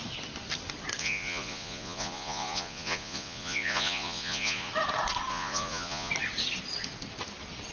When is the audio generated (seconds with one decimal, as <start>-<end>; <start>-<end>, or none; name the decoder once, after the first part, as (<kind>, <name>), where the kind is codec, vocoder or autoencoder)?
1.0-4.7 (vocoder, Vocos); 5.3-6.1